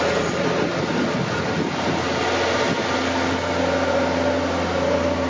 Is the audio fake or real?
real